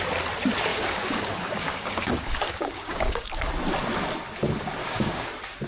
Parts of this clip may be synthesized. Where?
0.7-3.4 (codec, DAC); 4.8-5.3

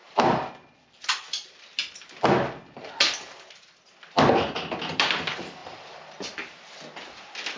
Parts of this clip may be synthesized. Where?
0.0-1.8 (vocoder, BigVGAN v2); 3.7-5.6; 7.1-7.6

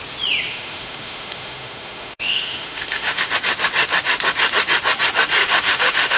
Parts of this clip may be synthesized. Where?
0.5-3.3 (autoencoder, DAC-VAE); 5.4-6.2

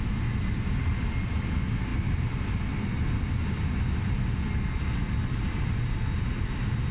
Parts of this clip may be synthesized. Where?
none

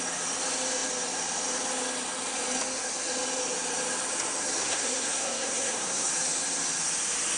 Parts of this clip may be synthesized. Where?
4.6-6.1 (codec, SNAC)